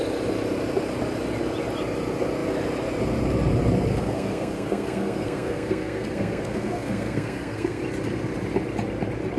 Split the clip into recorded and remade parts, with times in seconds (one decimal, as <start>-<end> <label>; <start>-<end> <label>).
0.0-3.9 recorded; 3.9-7.8 remade; 7.8-9.4 recorded